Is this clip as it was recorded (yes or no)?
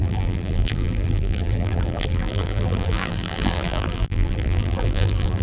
no